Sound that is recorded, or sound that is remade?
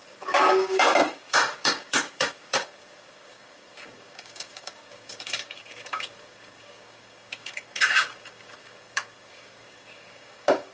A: remade